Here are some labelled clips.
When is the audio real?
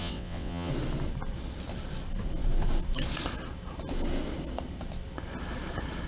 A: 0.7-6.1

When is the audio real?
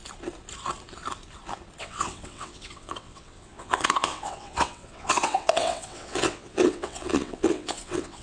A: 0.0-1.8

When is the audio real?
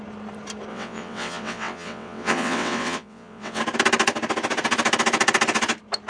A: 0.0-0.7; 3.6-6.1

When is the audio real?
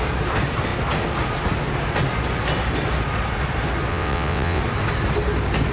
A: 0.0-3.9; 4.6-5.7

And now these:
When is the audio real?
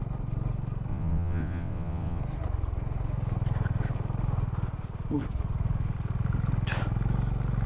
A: 0.0-0.9; 2.2-7.7